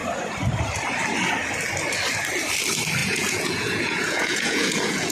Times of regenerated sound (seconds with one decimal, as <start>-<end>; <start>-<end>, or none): 3.0-5.1